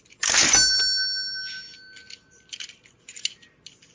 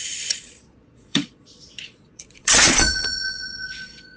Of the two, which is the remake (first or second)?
second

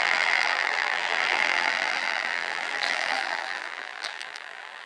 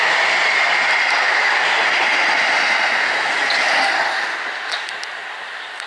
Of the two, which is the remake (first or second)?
first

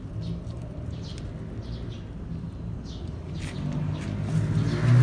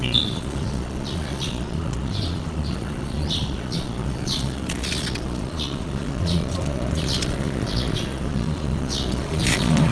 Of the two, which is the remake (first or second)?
second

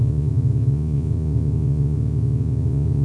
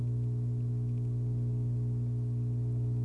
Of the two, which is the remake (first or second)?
first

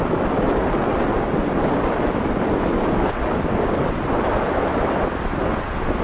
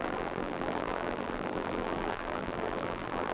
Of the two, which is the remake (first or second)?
second